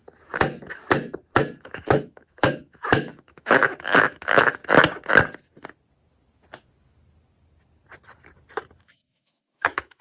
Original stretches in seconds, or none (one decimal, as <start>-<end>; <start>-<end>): 0.0-1.6; 4.6-8.8